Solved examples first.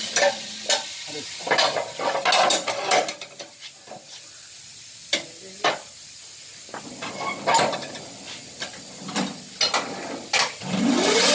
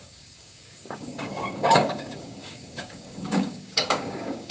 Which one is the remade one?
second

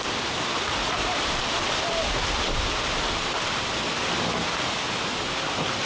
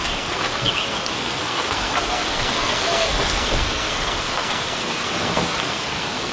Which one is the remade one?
second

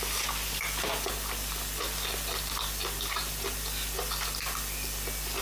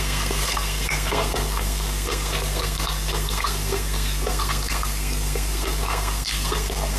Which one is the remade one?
second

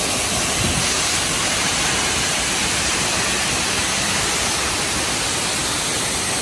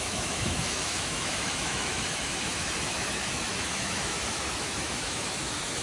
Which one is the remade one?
second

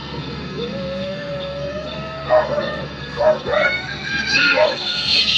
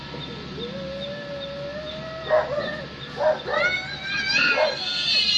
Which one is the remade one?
first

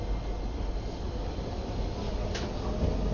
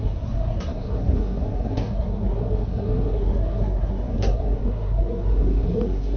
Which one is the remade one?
second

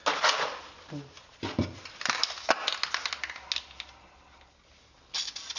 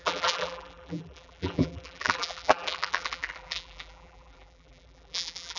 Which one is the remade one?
second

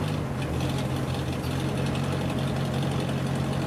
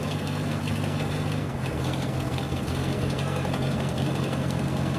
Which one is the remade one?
second